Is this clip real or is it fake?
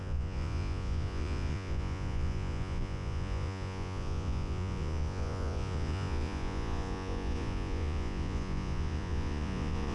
fake